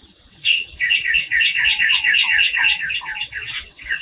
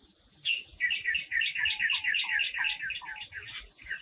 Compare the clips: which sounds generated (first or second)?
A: first